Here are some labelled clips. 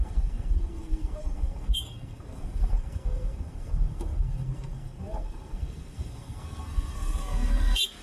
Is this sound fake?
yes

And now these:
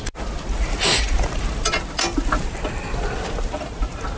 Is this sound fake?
no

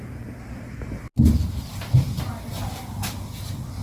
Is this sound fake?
no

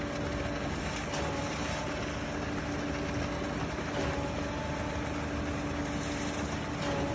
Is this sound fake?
no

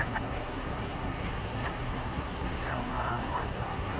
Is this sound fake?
yes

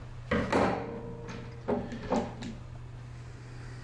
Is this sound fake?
no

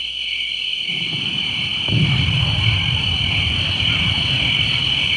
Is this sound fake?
no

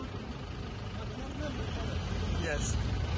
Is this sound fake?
no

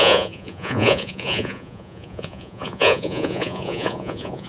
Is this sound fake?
yes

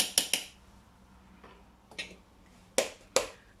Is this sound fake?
no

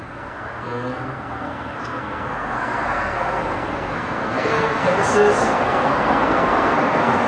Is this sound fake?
yes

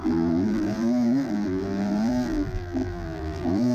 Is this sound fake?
yes